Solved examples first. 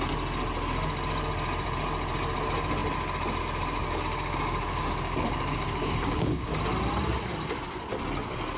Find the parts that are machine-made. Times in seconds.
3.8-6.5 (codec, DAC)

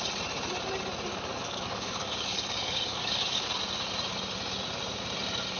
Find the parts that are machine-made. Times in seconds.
1.1-3.5 (codec, DAC)

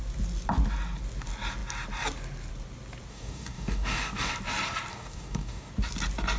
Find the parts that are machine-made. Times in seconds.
3.1-4.3 (codec, DAC); 4.9-5.7